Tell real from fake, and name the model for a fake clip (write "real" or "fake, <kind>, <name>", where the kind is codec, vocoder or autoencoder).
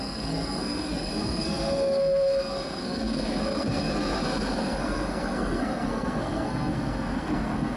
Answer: fake, codec, SNAC